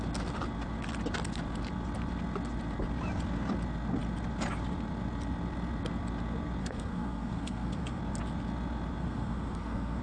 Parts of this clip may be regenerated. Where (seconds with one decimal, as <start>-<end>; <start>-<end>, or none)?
6.6-8.0; 9.0-10.0